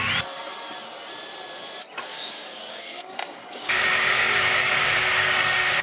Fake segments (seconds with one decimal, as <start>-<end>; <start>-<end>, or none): 2.1-5.8